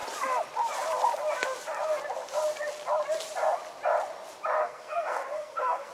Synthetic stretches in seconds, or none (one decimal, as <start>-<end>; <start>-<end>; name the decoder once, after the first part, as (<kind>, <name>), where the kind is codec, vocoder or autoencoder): 4.6-5.9 (codec, SNAC)